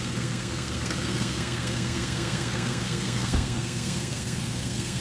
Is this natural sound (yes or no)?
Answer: no